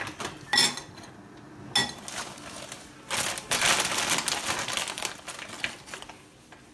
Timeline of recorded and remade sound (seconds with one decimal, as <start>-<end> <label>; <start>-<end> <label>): 0.0-6.7 recorded